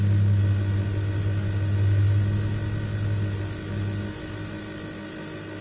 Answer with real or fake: real